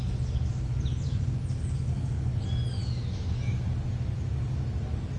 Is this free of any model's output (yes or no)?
yes